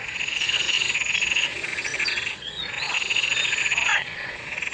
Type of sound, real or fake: fake